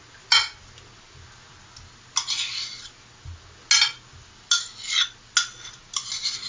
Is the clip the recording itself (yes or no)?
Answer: yes